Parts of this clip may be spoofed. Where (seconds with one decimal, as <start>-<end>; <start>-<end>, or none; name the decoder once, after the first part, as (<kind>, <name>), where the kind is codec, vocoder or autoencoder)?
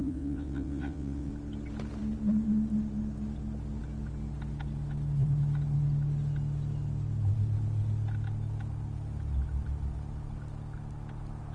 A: 0.0-1.3 (vocoder, WaveNeXt)